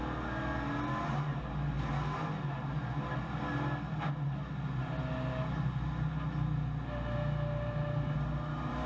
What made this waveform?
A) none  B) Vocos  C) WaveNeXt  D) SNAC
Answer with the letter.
A